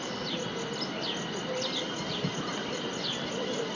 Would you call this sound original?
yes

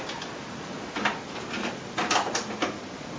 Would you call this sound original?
yes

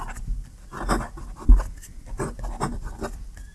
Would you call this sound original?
yes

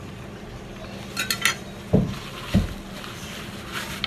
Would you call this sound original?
yes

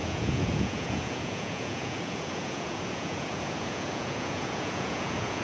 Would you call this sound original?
no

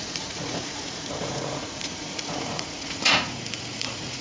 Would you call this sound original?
no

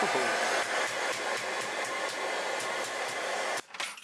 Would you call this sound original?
yes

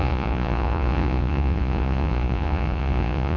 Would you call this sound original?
no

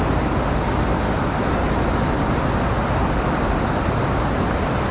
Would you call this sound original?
yes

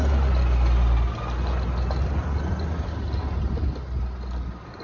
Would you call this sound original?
yes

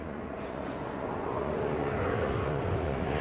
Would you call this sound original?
no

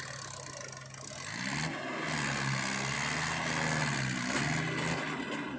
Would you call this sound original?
yes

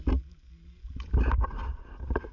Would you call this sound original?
yes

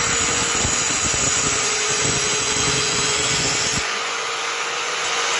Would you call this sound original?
no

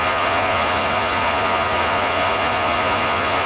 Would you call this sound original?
no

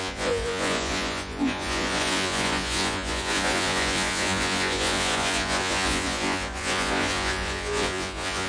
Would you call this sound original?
no